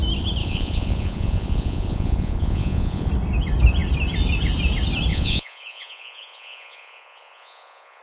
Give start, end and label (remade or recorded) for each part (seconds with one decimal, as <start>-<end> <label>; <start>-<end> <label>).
0.0-0.4 recorded; 0.4-3.1 remade; 3.1-5.1 recorded; 5.1-8.0 remade